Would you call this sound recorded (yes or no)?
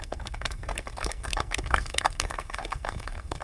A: no